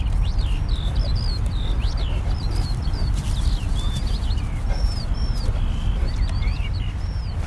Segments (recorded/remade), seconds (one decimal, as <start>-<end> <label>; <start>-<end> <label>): 0.0-7.5 recorded